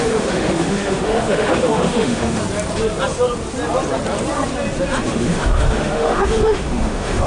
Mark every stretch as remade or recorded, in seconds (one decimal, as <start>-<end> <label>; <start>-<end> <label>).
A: 0.0-2.4 remade; 2.4-5.1 recorded; 5.1-7.3 remade